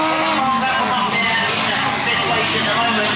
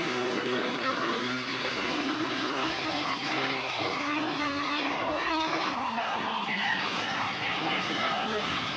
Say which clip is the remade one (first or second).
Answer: second